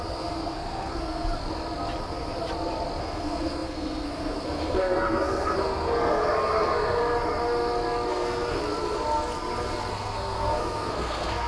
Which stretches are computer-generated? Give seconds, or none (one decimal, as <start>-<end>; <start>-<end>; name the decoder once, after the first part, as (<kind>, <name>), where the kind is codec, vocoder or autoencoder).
0.0-1.4 (codec, SNAC); 3.0-7.0; 8.1-8.6; 9.9-11.5